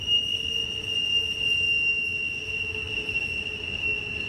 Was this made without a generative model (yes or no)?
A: yes